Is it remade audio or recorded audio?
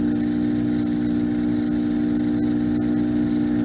recorded